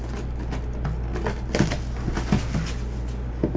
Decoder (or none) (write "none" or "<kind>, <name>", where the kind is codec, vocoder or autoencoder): none